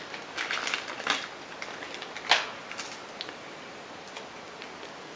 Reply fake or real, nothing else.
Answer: real